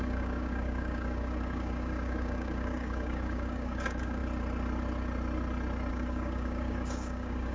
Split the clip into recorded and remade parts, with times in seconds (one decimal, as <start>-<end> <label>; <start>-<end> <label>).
0.0-4.2 remade; 4.2-5.9 recorded; 5.9-7.5 remade